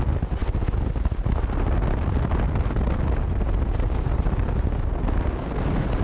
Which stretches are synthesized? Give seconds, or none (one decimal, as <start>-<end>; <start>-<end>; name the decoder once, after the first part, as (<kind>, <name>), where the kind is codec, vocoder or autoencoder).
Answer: none

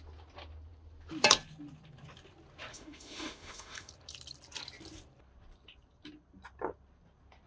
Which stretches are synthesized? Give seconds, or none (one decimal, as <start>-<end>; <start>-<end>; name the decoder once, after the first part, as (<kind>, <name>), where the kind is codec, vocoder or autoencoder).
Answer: 2.7-3.9 (autoencoder, DAC-VAE)

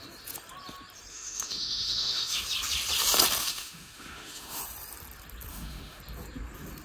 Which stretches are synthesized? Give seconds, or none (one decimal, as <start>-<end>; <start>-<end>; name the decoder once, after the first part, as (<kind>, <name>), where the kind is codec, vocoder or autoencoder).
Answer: 1.1-2.4 (autoencoder, DAC-VAE); 3.4-4.6; 5.5-6.0

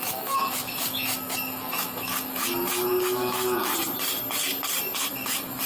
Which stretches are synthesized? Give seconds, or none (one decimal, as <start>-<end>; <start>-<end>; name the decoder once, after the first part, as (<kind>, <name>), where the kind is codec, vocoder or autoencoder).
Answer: 0.0-3.7 (autoencoder, DAC-VAE); 5.0-5.7

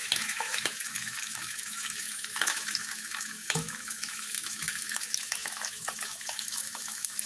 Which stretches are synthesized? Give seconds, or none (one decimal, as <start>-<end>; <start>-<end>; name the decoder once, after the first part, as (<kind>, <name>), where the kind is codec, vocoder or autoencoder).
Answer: 0.0-7.3 (autoencoder, DAC-VAE)

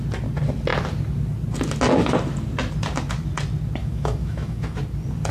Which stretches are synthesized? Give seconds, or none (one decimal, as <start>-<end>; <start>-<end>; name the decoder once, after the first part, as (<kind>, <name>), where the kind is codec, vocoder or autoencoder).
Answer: 3.8-4.8 (autoencoder, DAC-VAE)